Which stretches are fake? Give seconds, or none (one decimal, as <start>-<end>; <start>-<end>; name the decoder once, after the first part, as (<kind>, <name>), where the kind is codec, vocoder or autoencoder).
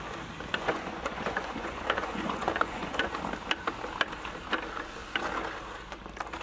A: 0.5-3.1 (vocoder, Vocos)